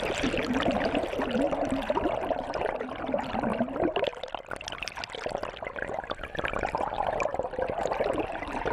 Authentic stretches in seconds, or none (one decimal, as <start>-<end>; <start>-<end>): 1.0-2.0; 3.5-6.5